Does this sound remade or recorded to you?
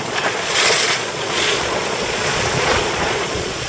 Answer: remade